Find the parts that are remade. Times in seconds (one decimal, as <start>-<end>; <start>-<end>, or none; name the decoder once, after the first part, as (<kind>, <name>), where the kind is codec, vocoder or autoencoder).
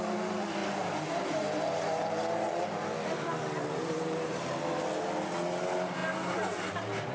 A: 0.6-2.6 (vocoder, BigVGAN v2); 3.8-4.8